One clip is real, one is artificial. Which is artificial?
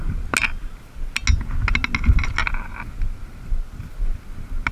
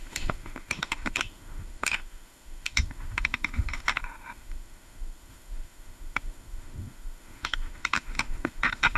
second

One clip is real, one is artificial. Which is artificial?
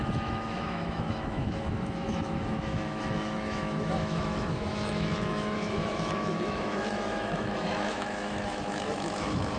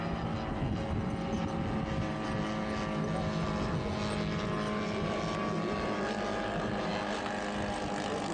first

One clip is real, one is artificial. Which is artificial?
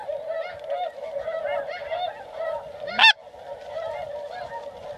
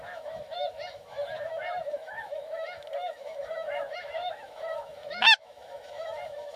second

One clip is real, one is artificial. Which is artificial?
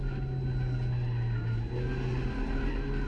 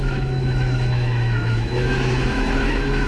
second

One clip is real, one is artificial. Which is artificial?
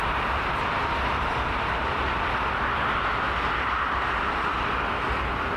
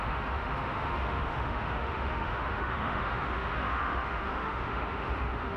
second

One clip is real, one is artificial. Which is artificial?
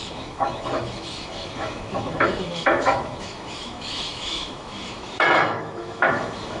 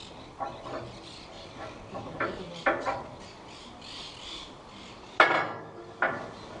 first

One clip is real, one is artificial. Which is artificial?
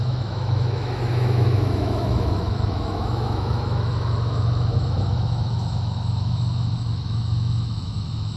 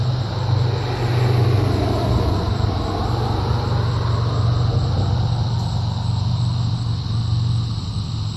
first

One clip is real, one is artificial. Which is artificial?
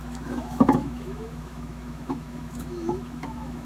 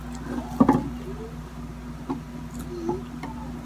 first